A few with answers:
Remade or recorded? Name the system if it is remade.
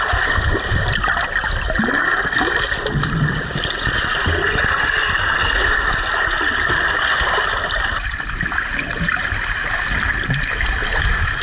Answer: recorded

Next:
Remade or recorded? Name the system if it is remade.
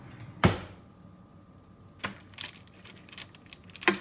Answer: recorded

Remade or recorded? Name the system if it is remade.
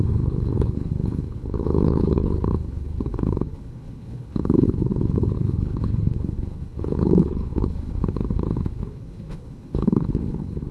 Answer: remade, codec, HILCodec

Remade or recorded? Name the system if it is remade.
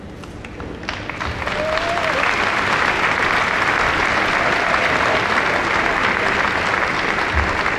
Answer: recorded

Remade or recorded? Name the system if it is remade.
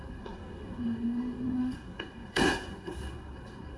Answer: remade, codec, SNAC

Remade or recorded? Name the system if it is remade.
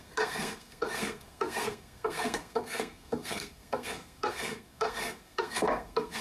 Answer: remade, codec, SNAC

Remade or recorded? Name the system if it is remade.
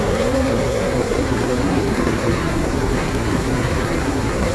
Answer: remade, codec, SNAC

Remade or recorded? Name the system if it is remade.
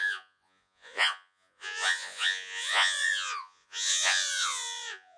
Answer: remade, vocoder, Vocos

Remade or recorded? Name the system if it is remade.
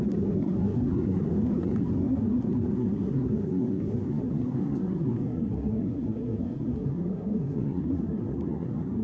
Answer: remade, codec, SNAC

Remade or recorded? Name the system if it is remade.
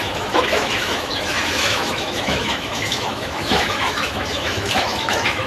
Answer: remade, autoencoder, DAC-VAE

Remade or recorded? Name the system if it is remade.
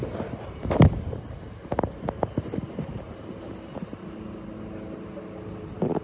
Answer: recorded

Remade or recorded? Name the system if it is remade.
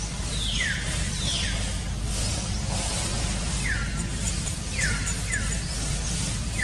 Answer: remade, vocoder, BigVGAN v2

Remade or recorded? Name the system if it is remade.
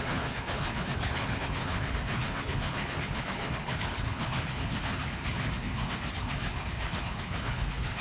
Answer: remade, codec, HILCodec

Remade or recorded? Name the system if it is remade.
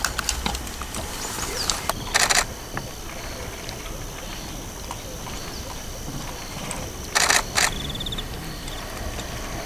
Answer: recorded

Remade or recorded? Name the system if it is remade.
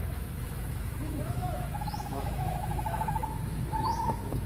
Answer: remade, autoencoder, DAC-VAE